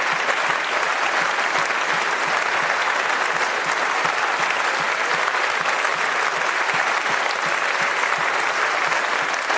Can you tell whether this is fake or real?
real